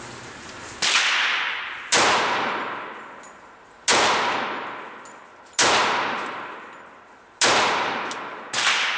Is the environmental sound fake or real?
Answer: real